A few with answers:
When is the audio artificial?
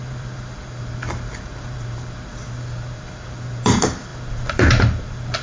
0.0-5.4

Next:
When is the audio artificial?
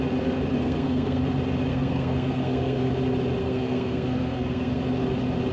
0.6-1.2; 1.7-2.9; 3.4-4.8